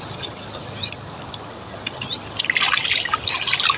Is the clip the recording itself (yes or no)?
yes